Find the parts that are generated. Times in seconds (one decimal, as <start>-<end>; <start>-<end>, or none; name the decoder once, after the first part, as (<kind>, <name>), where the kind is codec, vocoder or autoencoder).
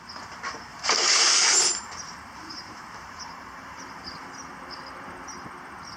0.7-4.3 (vocoder, BigVGAN v2)